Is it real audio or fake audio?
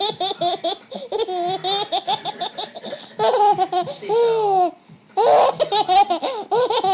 real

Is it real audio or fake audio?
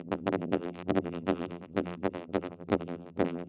fake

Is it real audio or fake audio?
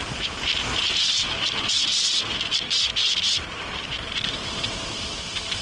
fake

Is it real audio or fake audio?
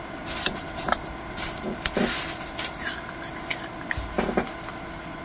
real